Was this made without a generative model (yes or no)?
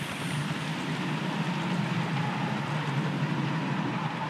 yes